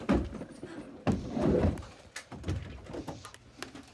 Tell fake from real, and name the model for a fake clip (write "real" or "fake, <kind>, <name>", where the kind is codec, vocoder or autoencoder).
real